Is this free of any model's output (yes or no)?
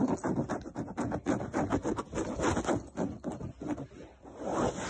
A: yes